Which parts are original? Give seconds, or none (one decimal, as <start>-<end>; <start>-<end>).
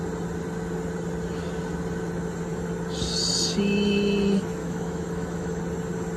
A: 0.0-4.6; 5.6-6.2